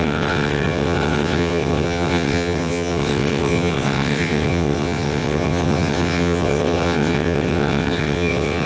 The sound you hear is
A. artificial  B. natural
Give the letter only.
A